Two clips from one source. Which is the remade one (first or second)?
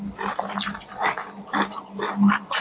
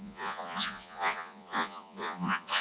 second